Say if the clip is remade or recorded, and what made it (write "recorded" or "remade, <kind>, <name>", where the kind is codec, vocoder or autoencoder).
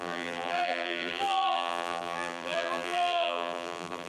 remade, vocoder, BigVGAN v2